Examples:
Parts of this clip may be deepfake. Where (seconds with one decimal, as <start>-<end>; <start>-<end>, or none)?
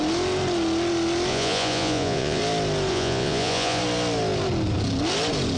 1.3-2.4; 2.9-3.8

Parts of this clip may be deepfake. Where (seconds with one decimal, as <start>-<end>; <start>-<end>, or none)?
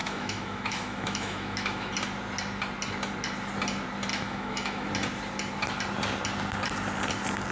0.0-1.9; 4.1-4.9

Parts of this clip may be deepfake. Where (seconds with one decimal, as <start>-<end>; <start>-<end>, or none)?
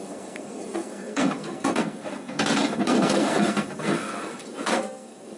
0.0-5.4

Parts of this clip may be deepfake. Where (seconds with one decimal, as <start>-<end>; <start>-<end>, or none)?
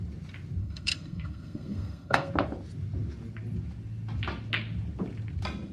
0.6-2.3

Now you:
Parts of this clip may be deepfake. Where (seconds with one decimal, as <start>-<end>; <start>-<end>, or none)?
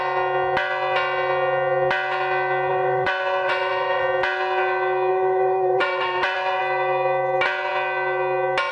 2.7-4.0; 5.1-6.6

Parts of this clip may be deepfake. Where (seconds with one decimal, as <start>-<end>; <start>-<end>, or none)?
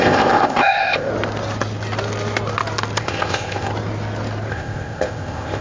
0.0-1.1; 3.0-3.7; 4.5-5.6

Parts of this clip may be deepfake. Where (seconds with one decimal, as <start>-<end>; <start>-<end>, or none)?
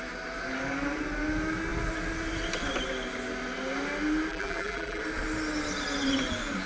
4.3-5.0